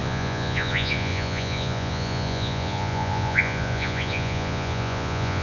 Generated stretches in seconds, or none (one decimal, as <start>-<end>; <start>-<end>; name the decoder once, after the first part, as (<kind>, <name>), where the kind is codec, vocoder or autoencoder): 0.0-5.4 (vocoder, Vocos)